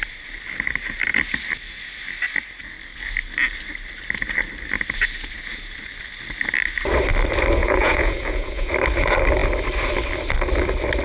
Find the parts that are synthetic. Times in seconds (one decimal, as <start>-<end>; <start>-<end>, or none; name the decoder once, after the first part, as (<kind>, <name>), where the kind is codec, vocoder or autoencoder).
7.6-8.7 (vocoder, Vocos)